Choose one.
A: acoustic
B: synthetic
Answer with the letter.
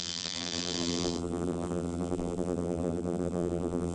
B